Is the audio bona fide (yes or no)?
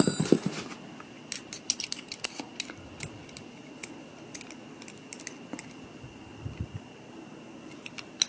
yes